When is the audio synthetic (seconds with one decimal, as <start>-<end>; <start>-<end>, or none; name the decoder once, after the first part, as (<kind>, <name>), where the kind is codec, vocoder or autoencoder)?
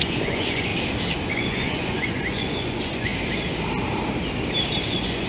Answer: 0.0-0.7 (vocoder, Vocos); 1.3-3.1; 4.8-5.3